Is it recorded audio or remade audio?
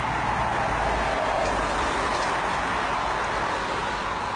recorded